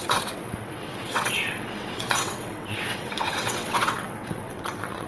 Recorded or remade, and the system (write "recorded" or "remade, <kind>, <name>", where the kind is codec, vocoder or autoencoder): remade, vocoder, WaveNeXt